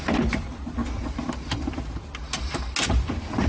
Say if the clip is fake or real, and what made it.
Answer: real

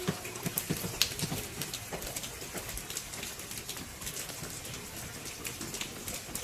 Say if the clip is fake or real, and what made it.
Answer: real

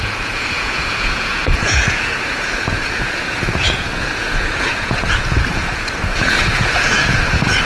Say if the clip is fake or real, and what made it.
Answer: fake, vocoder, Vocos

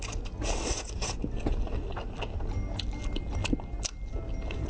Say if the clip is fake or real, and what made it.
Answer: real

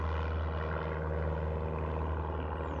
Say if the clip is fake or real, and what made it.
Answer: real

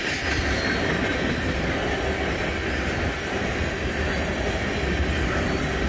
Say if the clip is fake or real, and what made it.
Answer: real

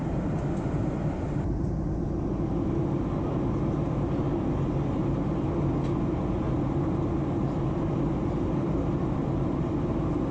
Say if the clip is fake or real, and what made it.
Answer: real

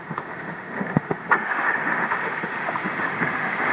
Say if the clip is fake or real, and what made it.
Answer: fake, autoencoder, DAC-VAE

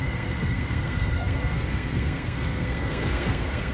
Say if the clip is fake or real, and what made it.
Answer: fake, codec, SNAC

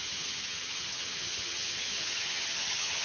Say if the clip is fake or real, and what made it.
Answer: fake, vocoder, HiFi-GAN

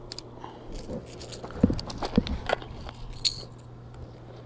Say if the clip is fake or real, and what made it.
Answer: real